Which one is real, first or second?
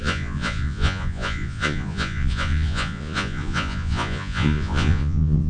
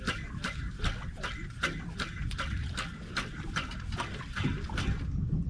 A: second